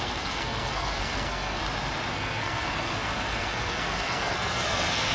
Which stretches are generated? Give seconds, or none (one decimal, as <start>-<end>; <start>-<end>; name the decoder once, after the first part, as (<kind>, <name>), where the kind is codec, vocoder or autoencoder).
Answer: 0.0-1.6 (codec, SNAC); 2.1-5.1